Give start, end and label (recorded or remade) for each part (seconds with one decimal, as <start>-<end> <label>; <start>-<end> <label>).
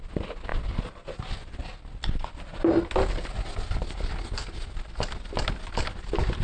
0.0-6.4 recorded